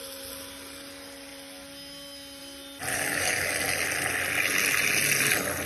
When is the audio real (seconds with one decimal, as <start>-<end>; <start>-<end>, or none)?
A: 0.0-2.9; 3.5-5.7